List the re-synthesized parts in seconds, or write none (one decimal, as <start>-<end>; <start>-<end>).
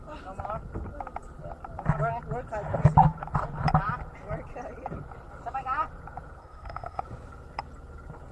6.4-7.0